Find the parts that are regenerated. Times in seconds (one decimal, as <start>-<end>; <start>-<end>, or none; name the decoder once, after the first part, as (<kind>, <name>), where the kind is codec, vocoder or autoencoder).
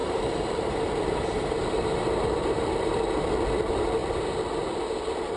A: 0.0-3.2 (vocoder, BigVGAN v2)